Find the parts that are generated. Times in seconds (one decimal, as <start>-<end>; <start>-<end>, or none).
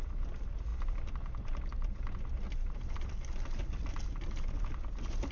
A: none